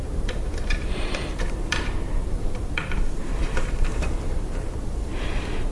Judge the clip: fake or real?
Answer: fake